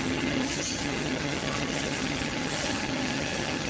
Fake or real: fake